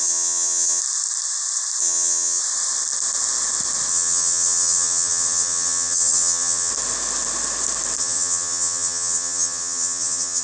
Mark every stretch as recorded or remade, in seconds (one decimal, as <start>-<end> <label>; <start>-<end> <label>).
0.0-0.8 remade; 0.8-1.8 recorded; 1.8-2.4 remade; 2.4-3.9 recorded; 3.9-6.7 remade; 6.7-8.0 recorded; 8.0-10.4 remade